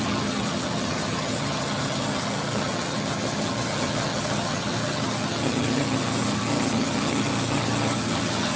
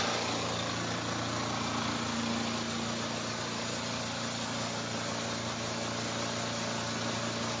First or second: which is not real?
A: first